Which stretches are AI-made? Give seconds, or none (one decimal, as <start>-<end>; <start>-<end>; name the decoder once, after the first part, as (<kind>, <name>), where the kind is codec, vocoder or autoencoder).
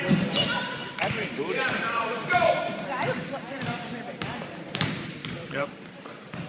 0.0-6.5 (vocoder, BigVGAN v2)